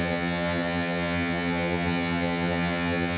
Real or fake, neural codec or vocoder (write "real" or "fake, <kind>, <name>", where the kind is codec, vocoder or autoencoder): fake, vocoder, HiFi-GAN